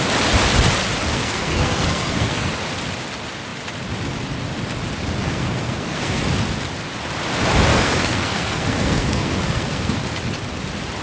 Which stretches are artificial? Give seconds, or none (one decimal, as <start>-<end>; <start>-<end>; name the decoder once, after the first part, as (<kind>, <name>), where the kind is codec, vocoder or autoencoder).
1.0-2.5 (codec, SNAC); 5.2-6.2; 7.7-10.0